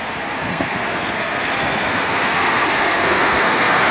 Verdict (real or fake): fake